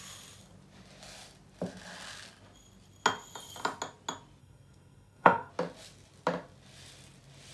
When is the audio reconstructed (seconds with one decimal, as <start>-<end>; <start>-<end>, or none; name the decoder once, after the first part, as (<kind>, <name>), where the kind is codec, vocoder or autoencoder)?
4.4-5.5 (codec, SNAC)